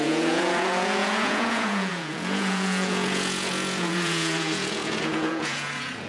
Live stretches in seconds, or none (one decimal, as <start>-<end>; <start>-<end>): none